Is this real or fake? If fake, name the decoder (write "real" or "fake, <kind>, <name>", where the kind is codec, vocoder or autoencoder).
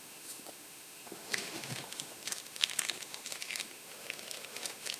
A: fake, autoencoder, DAC-VAE